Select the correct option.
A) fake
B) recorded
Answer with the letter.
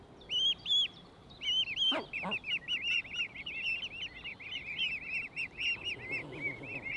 B